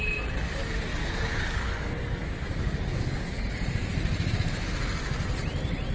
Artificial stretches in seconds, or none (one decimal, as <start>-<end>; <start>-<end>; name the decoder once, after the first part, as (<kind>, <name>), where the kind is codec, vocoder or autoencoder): 0.9-3.5 (codec, DAC)